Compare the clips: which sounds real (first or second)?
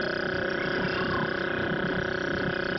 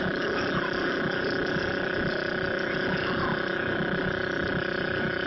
first